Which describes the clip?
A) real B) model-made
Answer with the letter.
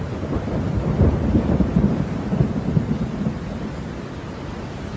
A